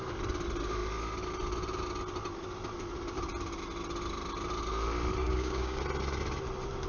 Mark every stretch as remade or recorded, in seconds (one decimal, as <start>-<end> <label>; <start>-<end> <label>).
0.0-5.2 recorded; 5.2-5.8 remade; 5.8-6.9 recorded